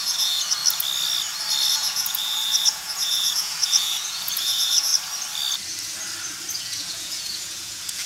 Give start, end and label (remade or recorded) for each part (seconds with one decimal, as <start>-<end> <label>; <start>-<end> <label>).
0.0-0.6 remade; 0.6-1.7 recorded; 1.7-4.9 remade; 4.9-6.6 recorded; 6.6-8.1 remade